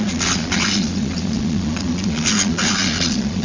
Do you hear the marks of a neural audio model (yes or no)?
yes